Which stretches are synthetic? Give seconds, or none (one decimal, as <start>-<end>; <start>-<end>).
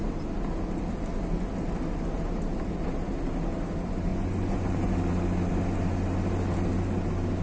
4.1-4.9